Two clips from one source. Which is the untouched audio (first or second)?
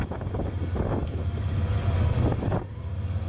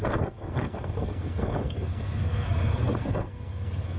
first